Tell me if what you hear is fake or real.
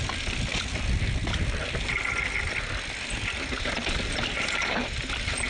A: real